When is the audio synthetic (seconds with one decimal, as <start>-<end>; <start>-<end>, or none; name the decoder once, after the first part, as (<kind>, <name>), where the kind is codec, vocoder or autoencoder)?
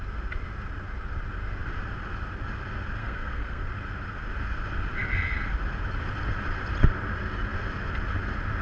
3.0-3.6 (codec, SNAC)